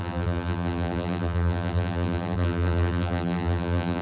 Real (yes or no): no